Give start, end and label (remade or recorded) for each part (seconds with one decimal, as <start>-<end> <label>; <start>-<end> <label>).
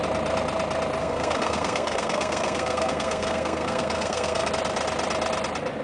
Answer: 0.0-1.0 recorded; 1.0-4.5 remade; 4.5-5.8 recorded